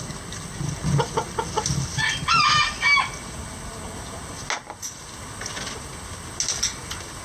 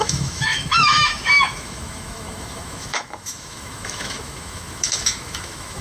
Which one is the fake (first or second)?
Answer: second